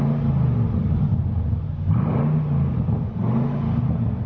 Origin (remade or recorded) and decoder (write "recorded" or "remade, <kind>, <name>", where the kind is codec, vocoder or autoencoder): recorded